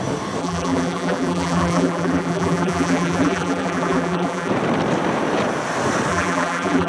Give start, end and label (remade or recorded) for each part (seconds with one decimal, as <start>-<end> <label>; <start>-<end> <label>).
0.0-0.4 recorded; 0.4-4.5 remade; 4.5-6.1 recorded; 6.1-6.9 remade